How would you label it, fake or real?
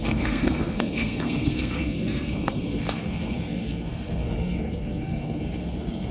fake